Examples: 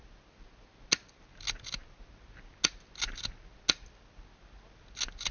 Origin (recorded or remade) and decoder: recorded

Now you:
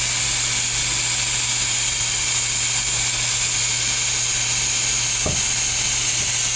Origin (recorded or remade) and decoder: recorded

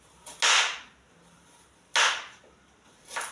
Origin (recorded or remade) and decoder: recorded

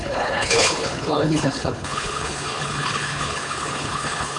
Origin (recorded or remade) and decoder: remade, codec, HILCodec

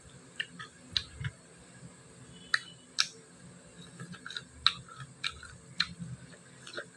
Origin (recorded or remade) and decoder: recorded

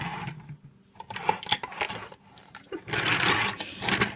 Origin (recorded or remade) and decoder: recorded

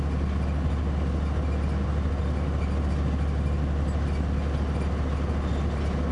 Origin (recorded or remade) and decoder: recorded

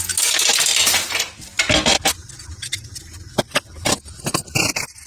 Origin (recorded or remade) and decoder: recorded